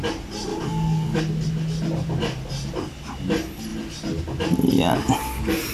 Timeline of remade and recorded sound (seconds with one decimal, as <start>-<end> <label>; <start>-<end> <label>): 0.0-0.5 recorded; 0.5-1.2 remade; 1.2-5.7 recorded